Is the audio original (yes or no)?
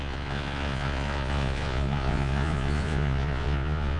no